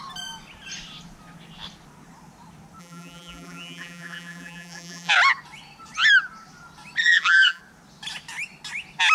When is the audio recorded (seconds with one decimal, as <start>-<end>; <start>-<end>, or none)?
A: 0.0-2.8; 5.1-7.0; 7.6-9.1